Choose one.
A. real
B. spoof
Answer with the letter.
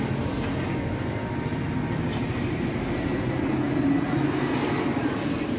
A